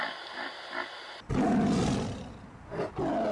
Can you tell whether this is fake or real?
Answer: real